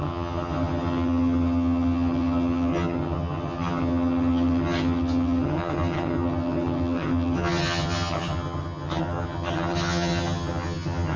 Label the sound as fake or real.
fake